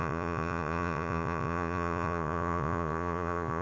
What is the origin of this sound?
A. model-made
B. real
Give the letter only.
A